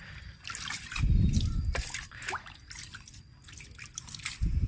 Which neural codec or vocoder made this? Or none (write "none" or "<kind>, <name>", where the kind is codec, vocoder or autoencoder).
none